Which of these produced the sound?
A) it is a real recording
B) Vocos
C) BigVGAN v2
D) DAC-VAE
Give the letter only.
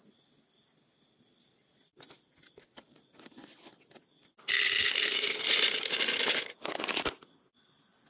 A